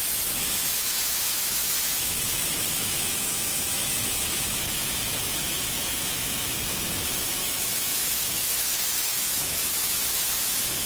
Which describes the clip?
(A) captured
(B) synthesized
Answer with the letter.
B